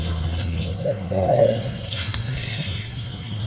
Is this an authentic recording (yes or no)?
no